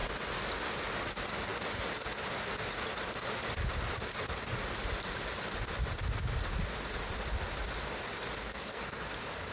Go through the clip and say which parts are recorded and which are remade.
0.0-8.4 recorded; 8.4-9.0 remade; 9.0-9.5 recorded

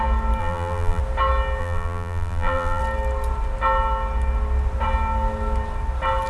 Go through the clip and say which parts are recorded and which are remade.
0.0-0.4 recorded; 0.4-1.0 remade; 1.0-1.6 recorded; 1.6-2.8 remade; 2.8-6.3 recorded

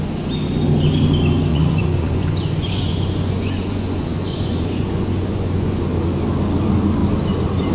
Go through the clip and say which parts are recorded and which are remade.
0.0-1.5 recorded; 1.5-5.8 remade; 5.8-7.7 recorded

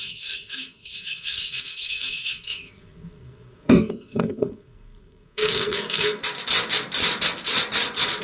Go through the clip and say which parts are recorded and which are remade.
0.0-6.2 remade; 6.2-8.2 recorded

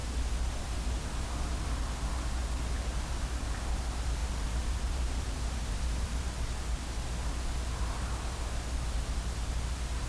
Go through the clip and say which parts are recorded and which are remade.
0.0-4.2 recorded; 4.2-6.2 remade; 6.2-10.1 recorded